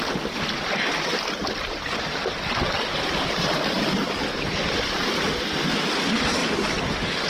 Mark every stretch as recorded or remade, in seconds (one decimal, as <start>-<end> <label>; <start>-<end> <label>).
0.0-2.9 recorded; 2.9-5.2 remade; 5.2-6.4 recorded; 6.4-7.3 remade